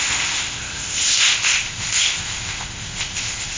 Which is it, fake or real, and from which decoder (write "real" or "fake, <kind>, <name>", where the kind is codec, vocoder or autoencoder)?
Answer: fake, codec, ZipCodec